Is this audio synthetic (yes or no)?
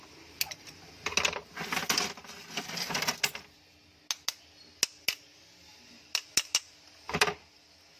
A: no